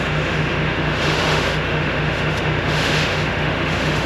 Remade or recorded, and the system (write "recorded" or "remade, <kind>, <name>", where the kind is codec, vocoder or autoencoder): remade, autoencoder, DAC-VAE